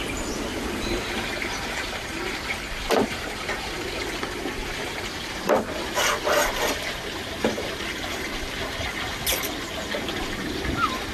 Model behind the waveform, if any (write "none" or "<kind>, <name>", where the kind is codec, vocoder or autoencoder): vocoder, BigVGAN v2